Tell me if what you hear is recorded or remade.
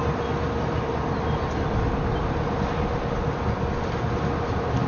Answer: recorded